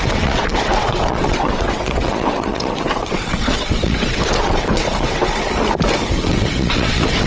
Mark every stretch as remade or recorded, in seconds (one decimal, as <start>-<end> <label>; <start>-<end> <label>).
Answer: 0.0-5.2 remade; 5.2-6.2 recorded; 6.2-7.3 remade